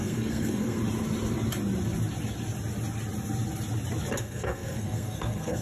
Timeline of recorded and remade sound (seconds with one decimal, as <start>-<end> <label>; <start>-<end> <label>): 0.0-0.8 remade; 0.8-4.2 recorded; 4.2-5.6 remade